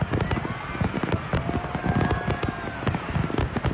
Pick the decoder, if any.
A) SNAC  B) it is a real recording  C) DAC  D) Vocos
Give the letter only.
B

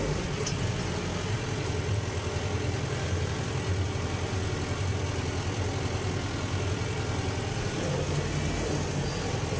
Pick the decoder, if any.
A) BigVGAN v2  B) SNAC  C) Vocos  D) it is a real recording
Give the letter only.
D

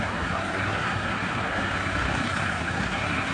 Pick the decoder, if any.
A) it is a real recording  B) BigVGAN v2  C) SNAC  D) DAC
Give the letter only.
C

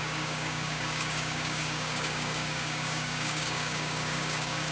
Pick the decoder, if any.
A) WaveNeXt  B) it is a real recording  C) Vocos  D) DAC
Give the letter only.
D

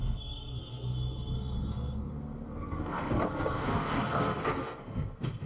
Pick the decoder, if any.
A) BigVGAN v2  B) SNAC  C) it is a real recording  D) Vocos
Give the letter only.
B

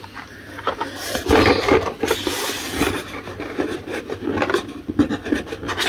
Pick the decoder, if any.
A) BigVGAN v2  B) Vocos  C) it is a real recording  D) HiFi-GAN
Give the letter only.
A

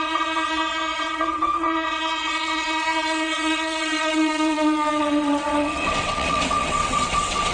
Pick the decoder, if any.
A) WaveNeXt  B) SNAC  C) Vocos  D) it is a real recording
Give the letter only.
A